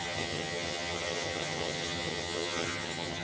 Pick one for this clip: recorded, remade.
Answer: remade